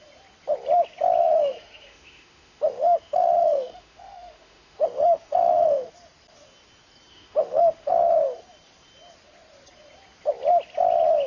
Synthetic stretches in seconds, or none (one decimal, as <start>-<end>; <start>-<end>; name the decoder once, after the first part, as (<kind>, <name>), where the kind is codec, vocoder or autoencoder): 1.2-5.9 (autoencoder, DAC-VAE); 7.1-7.9